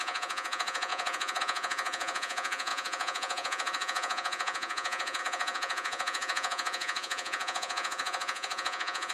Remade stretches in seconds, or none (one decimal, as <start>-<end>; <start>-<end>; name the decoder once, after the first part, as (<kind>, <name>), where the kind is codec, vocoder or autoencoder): 0.0-9.1 (vocoder, Vocos)

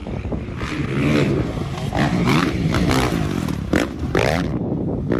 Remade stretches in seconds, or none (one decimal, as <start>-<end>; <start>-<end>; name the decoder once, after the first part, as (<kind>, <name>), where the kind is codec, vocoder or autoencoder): 0.0-0.9 (vocoder, BigVGAN v2); 2.3-4.6

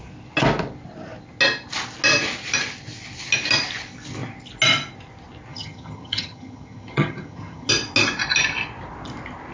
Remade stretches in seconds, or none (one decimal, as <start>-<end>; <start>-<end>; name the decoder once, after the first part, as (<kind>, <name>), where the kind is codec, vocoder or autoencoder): 5.5-7.7 (vocoder, HiFi-GAN)

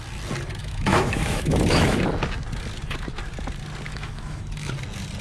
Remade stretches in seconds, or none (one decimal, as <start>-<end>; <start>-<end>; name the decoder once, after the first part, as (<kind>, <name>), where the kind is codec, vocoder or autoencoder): 0.6-2.0 (autoencoder, DAC-VAE); 3.9-4.7